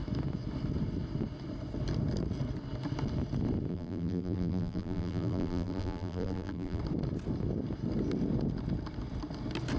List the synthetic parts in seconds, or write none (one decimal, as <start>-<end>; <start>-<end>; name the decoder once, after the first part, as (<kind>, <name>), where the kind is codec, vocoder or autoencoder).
3.7-6.8 (vocoder, BigVGAN v2)